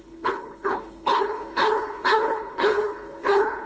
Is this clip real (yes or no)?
no